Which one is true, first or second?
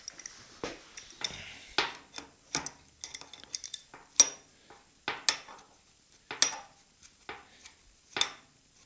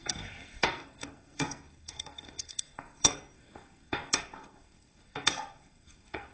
first